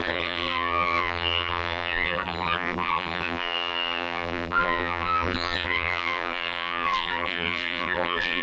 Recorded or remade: remade